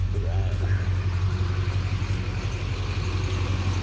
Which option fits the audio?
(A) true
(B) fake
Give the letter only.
A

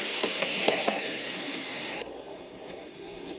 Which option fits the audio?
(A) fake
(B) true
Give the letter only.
A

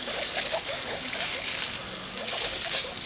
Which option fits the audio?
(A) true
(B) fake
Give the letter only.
B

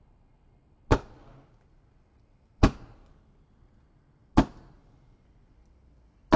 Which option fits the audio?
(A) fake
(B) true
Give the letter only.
B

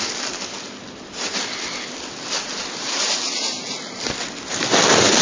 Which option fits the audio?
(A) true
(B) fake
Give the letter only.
A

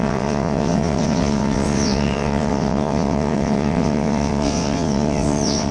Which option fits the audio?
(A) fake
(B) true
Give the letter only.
A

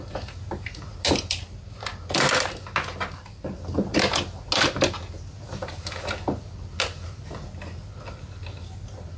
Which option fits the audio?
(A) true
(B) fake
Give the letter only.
A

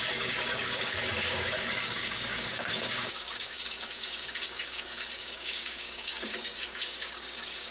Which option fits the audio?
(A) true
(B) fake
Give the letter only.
B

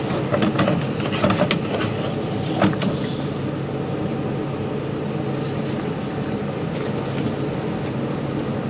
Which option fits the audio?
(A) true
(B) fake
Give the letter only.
A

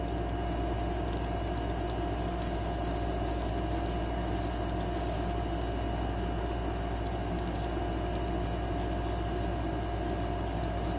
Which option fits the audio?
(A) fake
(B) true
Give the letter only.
B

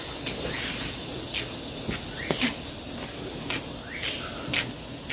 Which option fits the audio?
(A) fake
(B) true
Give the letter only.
B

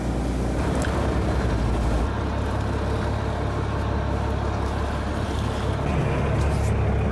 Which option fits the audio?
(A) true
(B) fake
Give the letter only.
A